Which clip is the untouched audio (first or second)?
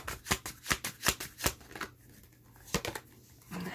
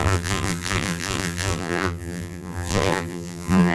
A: first